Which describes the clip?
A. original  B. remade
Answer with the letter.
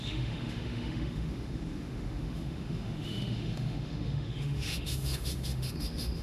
B